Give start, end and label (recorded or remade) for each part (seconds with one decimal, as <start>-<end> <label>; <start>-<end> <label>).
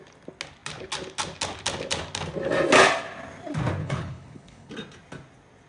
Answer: 0.0-3.8 recorded; 3.8-4.7 remade; 4.7-5.7 recorded